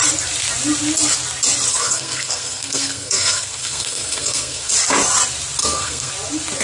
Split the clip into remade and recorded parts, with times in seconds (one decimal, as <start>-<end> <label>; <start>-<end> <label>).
0.0-1.7 recorded; 1.7-4.7 remade; 4.7-5.6 recorded; 5.6-6.1 remade; 6.1-6.6 recorded